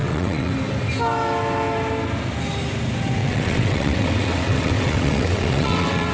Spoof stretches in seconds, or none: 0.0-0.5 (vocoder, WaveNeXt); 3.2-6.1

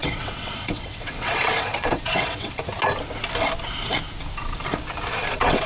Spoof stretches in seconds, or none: 0.0-2.6 (vocoder, WaveNeXt); 5.3-5.7

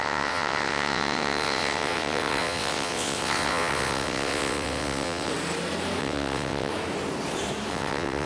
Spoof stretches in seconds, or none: 0.0-5.3 (vocoder, WaveNeXt); 6.0-6.7; 7.7-8.3